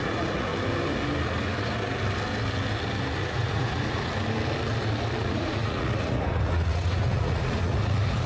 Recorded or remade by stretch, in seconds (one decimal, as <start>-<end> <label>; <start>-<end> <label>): 0.0-0.5 remade; 0.5-3.2 recorded; 3.2-4.1 remade; 4.1-5.2 recorded; 5.2-8.3 remade